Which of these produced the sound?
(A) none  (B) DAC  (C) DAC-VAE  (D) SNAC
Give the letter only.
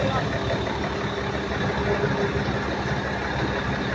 A